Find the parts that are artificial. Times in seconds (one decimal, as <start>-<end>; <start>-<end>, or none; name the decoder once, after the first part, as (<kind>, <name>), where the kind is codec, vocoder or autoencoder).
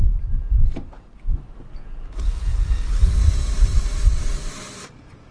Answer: 3.2-4.8 (vocoder, BigVGAN v2)